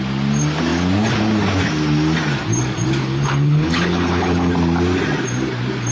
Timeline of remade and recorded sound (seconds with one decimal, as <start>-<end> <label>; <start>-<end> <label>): 0.0-3.0 recorded; 3.0-4.5 remade; 4.5-5.9 recorded